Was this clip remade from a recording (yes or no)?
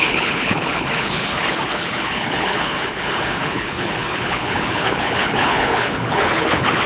yes